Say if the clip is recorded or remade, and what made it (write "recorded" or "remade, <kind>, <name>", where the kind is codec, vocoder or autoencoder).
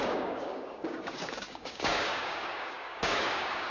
remade, codec, DAC